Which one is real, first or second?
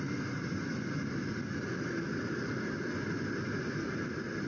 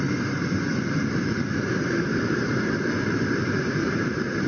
first